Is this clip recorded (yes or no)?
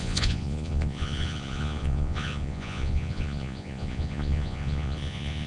no